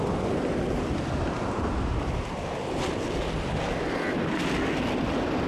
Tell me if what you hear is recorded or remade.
recorded